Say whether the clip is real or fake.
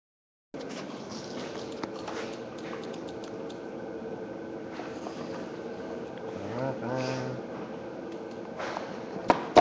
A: real